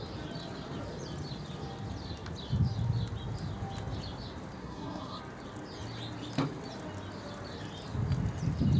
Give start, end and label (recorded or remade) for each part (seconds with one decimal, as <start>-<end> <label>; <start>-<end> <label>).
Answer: 0.0-4.6 recorded; 4.6-5.2 remade; 5.2-8.8 recorded